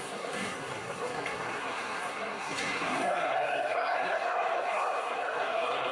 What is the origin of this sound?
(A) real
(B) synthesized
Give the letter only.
B